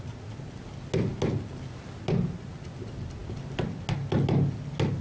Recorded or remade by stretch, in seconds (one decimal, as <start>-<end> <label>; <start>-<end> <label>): 0.0-5.0 recorded